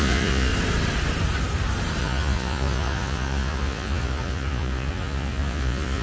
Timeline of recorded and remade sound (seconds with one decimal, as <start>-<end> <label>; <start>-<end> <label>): 0.0-0.5 remade; 0.5-2.0 recorded; 2.0-6.0 remade